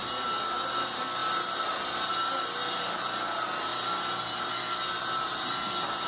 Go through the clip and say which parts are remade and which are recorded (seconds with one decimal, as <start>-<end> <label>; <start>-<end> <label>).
0.0-6.1 recorded